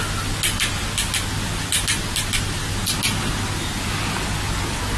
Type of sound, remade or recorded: recorded